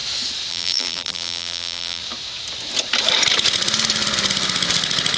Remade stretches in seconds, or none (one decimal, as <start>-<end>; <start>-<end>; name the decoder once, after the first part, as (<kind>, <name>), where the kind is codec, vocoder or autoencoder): 0.5-2.0 (vocoder, BigVGAN v2)